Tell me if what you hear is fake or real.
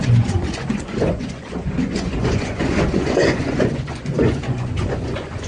fake